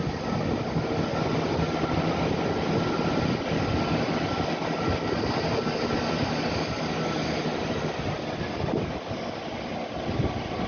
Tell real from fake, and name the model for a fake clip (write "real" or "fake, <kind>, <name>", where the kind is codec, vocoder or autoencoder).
real